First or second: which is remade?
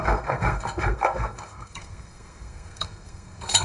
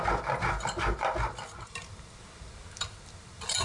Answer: first